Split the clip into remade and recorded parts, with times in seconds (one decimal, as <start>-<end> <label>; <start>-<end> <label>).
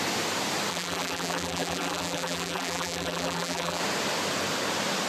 0.0-0.7 recorded; 0.7-3.8 remade; 3.8-5.1 recorded